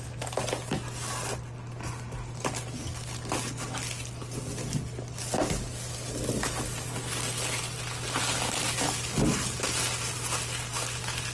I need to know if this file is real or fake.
real